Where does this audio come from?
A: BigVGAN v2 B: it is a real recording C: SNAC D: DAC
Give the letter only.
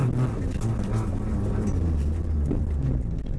B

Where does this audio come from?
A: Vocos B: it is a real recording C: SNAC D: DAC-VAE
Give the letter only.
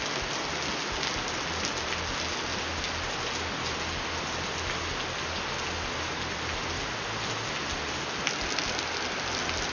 B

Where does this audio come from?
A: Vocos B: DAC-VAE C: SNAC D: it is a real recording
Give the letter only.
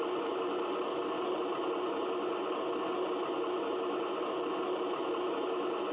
D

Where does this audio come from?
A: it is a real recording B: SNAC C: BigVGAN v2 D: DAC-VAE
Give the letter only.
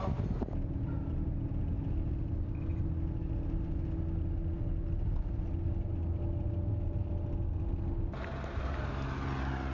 A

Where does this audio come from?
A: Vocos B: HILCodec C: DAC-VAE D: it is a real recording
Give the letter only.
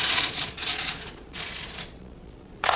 A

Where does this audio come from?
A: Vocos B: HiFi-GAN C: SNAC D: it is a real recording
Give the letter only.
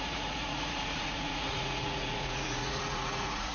A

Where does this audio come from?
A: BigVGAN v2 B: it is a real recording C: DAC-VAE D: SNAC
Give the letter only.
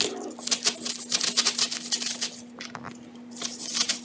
B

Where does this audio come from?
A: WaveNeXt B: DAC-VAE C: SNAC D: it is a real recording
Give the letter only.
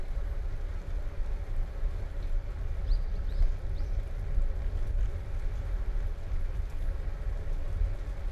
D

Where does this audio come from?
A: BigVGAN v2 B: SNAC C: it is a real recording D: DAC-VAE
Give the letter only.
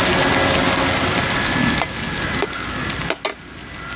C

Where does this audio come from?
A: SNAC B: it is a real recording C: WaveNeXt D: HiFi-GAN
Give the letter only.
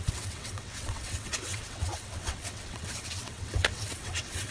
C